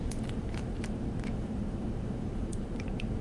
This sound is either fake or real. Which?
fake